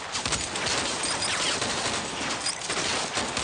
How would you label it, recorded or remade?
recorded